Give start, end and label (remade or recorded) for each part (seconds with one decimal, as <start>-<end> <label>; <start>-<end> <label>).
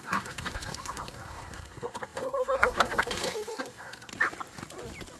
0.0-4.1 remade; 4.1-5.2 recorded